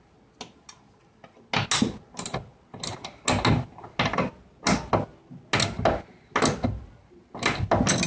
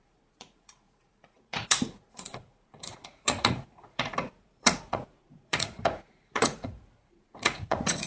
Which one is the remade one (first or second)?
second